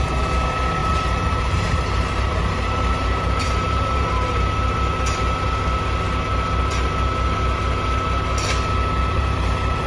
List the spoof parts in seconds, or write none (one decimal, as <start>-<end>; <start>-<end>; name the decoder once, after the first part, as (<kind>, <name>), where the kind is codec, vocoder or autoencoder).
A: 0.8-4.8 (vocoder, BigVGAN v2); 9.2-9.9